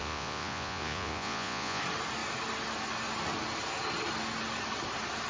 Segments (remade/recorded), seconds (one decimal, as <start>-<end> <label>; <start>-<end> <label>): 0.0-1.8 remade; 1.8-5.3 recorded